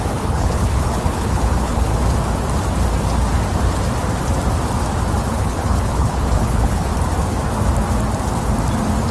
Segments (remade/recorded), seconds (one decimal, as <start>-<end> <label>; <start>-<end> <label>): 0.0-1.9 remade; 1.9-5.3 recorded; 5.3-6.9 remade; 6.9-9.1 recorded